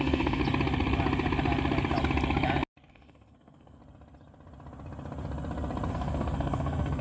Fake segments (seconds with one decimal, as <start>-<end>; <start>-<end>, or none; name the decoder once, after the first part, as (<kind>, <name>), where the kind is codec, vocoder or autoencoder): 0.0-0.4 (codec, SNAC); 2.9-3.8; 5.9-7.0